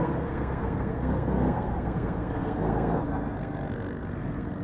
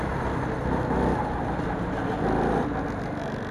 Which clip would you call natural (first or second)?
second